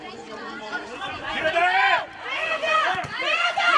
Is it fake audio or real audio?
fake